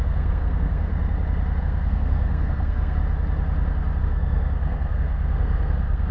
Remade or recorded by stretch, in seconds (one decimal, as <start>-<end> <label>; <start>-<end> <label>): 0.0-0.9 remade; 0.9-1.6 recorded; 1.6-3.0 remade; 3.0-4.0 recorded; 4.0-6.1 remade